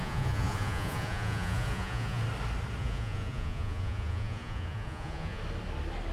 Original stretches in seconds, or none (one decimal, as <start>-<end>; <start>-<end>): 2.2-2.8; 5.4-6.1